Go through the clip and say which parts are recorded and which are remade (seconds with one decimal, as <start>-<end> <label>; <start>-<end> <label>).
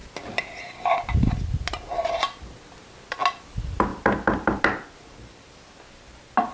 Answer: 0.0-6.5 recorded